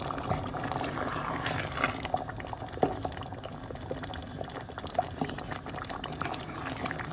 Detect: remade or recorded recorded